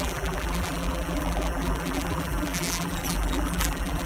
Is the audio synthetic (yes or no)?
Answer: yes